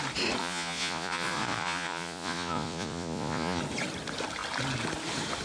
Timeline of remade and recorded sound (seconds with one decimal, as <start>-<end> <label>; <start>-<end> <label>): 0.0-0.4 recorded; 0.4-3.6 remade; 3.6-5.4 recorded

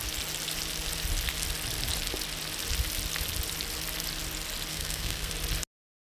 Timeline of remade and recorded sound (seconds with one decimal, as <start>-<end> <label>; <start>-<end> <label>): 0.0-4.7 recorded; 4.7-5.3 remade; 5.3-6.2 recorded